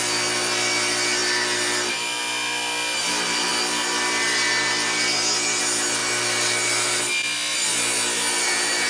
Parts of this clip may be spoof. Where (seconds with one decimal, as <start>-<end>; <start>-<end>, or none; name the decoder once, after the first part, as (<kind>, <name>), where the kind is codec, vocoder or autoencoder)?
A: none